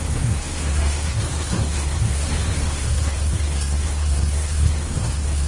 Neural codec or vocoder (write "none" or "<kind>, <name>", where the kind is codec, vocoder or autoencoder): codec, SNAC